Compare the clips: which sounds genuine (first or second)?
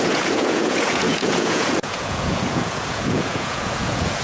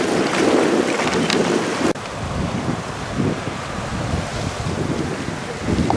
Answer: second